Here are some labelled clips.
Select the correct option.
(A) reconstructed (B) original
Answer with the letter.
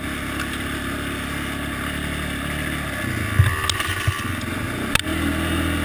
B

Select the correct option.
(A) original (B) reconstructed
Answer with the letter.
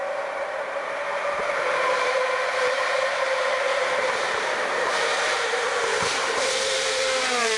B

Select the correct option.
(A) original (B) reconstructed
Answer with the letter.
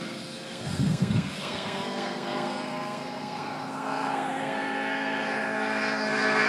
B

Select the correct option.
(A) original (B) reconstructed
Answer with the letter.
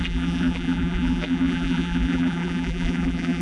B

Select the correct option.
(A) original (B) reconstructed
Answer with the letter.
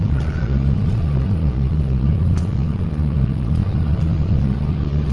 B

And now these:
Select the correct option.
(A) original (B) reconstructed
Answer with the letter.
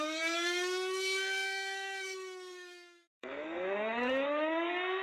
B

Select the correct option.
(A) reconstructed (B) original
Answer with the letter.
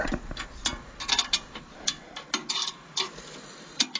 B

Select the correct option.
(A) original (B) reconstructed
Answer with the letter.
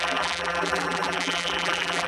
B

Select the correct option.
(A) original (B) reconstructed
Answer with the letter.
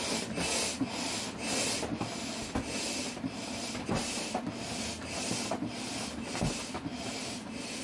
A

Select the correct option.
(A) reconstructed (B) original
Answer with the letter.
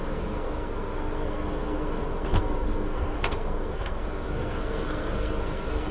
A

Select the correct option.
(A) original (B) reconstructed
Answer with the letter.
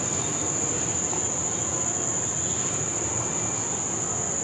A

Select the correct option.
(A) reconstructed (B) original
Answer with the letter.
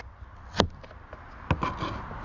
B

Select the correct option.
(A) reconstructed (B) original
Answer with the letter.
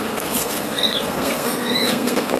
A